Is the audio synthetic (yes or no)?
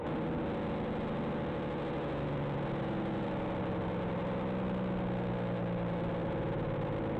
no